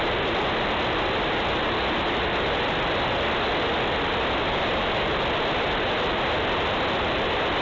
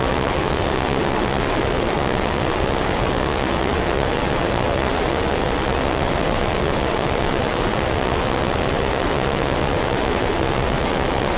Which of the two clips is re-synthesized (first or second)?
second